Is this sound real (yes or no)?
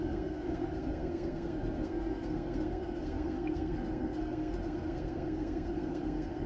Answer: no